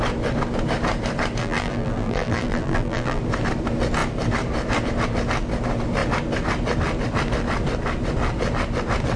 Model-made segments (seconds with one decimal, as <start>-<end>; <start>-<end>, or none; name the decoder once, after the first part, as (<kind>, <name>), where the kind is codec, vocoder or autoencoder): 1.4-3.2 (vocoder, BigVGAN v2)